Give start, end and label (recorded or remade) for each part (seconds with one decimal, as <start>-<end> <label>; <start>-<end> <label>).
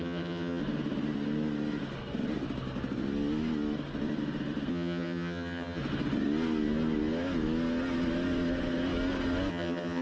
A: 0.0-0.6 remade; 0.6-4.7 recorded; 4.7-5.8 remade; 5.8-9.5 recorded; 9.5-10.0 remade